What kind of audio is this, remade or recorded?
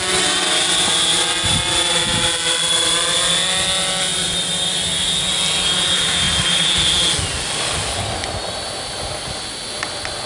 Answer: recorded